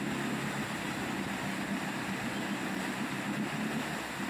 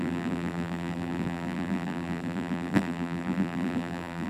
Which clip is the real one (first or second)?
first